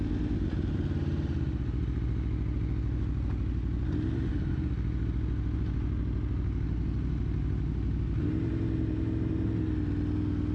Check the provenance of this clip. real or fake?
real